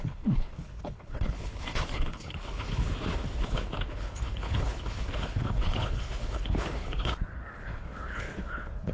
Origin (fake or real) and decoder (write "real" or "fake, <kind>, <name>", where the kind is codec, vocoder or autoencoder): fake, codec, HILCodec